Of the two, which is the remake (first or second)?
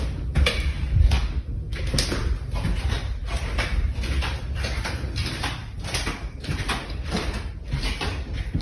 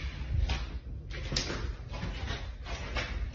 first